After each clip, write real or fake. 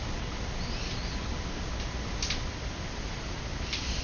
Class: real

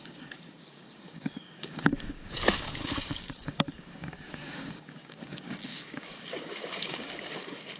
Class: fake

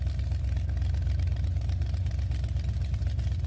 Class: real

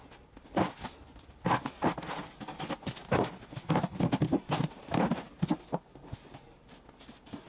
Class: real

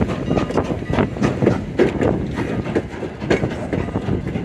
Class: real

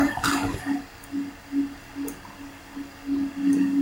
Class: fake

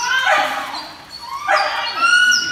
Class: real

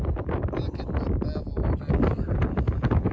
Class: real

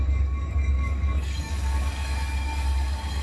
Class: fake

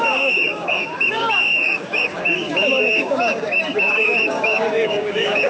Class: fake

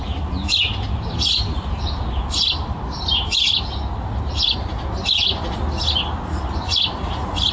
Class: real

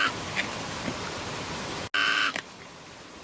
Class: real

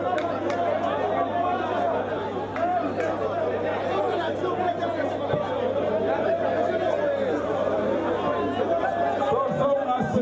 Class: real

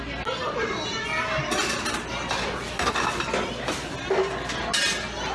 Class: real